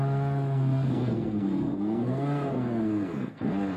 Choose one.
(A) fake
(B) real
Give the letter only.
A